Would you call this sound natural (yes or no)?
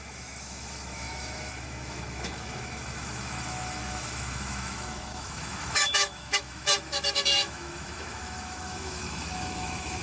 no